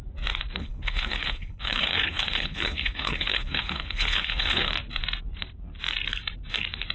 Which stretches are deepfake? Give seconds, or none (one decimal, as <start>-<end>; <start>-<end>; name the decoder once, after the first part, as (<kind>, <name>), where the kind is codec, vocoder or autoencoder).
0.6-4.7 (codec, HILCodec)